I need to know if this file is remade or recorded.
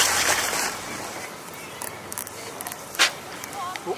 remade